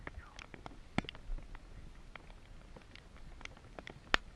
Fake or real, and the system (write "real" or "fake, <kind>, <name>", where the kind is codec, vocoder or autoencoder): real